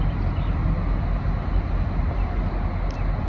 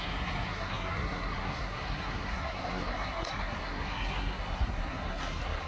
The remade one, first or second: second